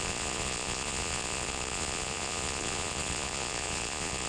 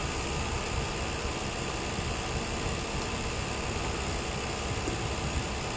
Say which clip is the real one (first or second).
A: second